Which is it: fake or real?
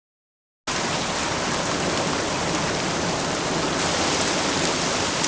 real